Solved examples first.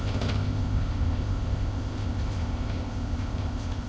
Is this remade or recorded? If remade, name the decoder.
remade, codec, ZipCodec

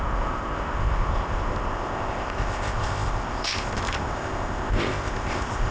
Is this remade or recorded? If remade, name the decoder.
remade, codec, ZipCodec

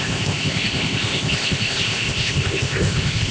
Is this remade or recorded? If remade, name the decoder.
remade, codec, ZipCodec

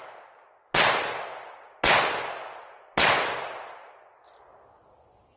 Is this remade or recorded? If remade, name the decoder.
recorded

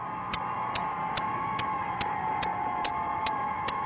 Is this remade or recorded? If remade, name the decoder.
recorded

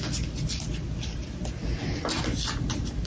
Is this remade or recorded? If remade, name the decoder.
recorded